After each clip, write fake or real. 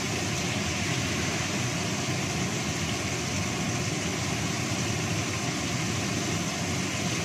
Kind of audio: real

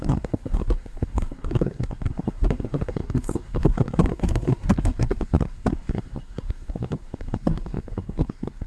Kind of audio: fake